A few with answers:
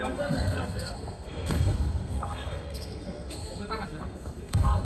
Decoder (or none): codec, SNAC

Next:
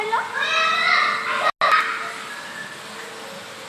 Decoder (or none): none